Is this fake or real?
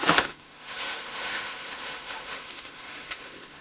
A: fake